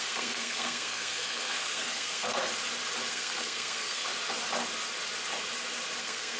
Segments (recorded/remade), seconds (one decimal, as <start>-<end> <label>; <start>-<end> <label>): 0.0-2.4 remade; 2.4-3.1 recorded; 3.1-4.1 remade; 4.1-6.0 recorded; 6.0-6.4 remade